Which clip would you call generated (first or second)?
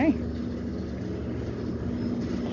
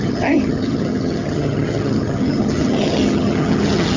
second